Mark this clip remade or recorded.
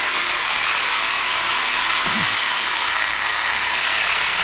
remade